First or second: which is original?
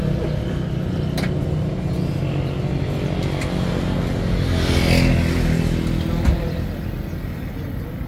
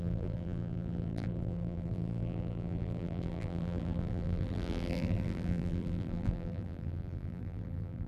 first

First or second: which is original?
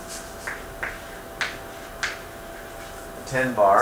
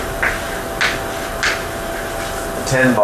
first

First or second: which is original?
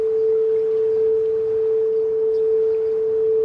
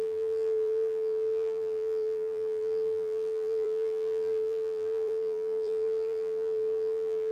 first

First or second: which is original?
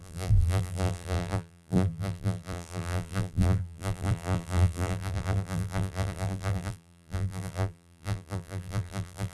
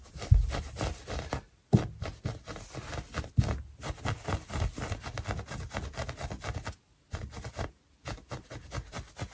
second